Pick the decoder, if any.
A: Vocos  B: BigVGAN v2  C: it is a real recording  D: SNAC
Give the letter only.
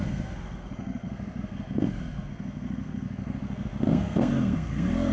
D